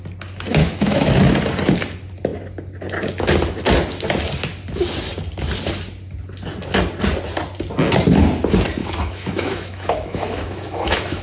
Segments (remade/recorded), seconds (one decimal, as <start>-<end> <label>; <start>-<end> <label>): 0.0-0.6 recorded; 0.6-1.4 remade; 1.4-8.8 recorded; 8.8-11.2 remade